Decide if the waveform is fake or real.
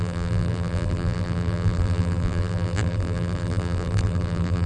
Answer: fake